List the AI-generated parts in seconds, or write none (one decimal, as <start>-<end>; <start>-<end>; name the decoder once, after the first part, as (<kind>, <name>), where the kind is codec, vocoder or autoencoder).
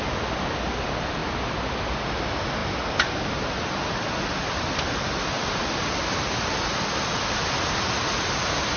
none